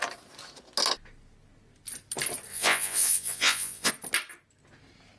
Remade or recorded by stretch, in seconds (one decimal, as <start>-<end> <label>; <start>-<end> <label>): 0.0-2.5 recorded; 2.5-3.9 remade; 3.9-5.2 recorded